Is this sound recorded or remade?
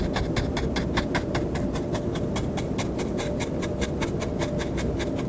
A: recorded